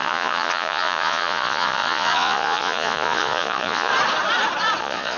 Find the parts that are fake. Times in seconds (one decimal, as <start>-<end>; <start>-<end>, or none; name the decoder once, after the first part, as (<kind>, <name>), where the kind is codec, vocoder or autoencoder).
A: 0.0-3.9 (vocoder, Vocos); 4.8-5.2

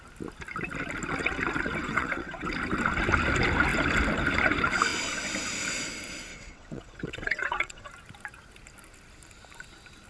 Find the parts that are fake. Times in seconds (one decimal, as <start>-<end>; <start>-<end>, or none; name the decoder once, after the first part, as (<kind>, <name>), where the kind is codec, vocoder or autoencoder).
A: 1.8-2.5 (vocoder, WaveNeXt); 6.3-7.9

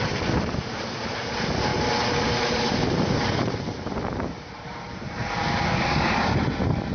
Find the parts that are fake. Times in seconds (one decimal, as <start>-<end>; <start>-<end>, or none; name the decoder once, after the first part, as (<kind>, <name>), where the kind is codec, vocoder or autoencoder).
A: 1.7-5.1 (vocoder, BigVGAN v2)

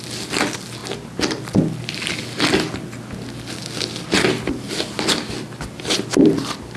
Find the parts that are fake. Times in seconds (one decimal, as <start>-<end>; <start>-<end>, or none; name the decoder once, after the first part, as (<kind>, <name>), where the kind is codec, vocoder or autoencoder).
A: none

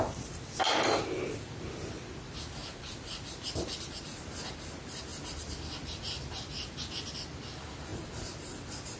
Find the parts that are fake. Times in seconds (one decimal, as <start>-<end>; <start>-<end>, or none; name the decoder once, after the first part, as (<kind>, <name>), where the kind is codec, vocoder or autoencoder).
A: 2.6-4.2 (vocoder, BigVGAN v2); 5.1-6.0; 7.9-9.0

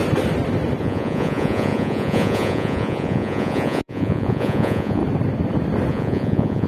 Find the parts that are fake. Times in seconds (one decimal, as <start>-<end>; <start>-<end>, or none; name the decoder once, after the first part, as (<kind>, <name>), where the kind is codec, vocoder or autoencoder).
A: 0.8-5.0 (vocoder, Vocos); 5.9-6.7